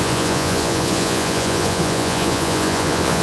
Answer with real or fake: fake